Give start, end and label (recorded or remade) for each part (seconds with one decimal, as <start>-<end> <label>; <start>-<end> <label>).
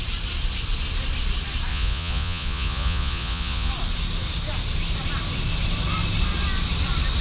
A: 0.0-1.7 recorded; 1.7-3.7 remade; 3.7-7.2 recorded